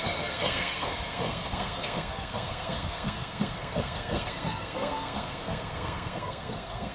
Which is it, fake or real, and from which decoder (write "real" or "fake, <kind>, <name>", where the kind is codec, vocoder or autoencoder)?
fake, codec, SNAC